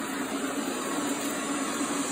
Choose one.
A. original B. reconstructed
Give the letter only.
B